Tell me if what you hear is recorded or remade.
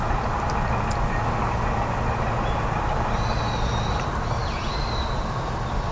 recorded